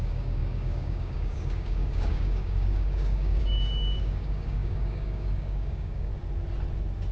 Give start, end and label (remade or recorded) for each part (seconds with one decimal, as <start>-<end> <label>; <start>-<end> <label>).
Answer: 0.0-6.1 remade; 6.1-7.1 recorded